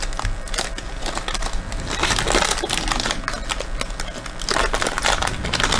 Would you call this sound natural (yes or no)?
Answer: yes